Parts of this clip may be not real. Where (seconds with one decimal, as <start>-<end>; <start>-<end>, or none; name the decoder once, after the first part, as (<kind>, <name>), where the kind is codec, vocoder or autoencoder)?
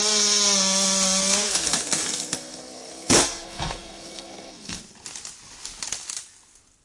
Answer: 1.2-4.8 (codec, SNAC)